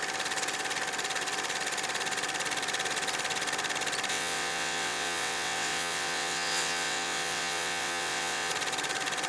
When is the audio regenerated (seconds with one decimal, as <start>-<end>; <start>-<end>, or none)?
4.1-8.5